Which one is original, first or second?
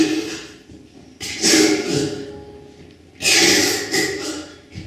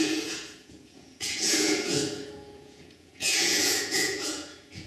first